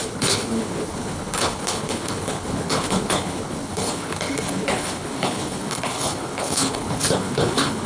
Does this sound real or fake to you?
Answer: fake